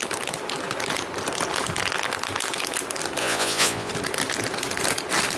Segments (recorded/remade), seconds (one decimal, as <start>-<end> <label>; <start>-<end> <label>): 0.0-3.2 recorded; 3.2-3.9 remade; 3.9-5.4 recorded